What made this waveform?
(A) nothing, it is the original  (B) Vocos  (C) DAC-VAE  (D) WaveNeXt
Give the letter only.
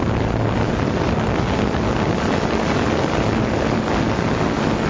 A